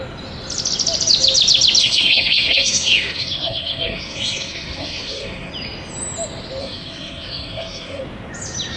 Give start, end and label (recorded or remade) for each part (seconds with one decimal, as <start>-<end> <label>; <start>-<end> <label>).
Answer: 0.0-1.8 recorded; 1.8-5.5 remade; 5.5-6.6 recorded; 6.6-8.0 remade; 8.0-8.8 recorded